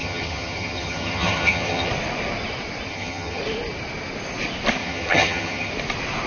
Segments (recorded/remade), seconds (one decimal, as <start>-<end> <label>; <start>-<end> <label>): 0.0-1.9 remade; 1.9-2.9 recorded; 2.9-3.4 remade; 3.4-4.8 recorded; 4.8-5.7 remade; 5.7-6.3 recorded